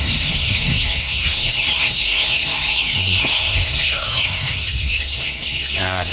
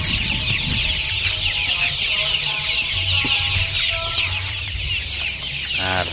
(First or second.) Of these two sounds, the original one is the second